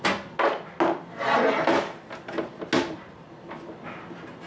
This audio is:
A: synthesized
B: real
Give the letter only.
B